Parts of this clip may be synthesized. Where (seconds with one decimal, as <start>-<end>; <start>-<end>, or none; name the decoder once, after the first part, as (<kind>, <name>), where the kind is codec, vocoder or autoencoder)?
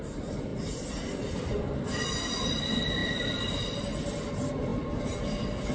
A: none